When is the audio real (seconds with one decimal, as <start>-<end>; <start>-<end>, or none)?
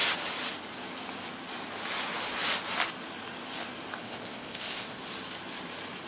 0.0-4.0; 5.0-6.1